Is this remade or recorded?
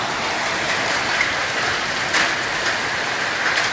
recorded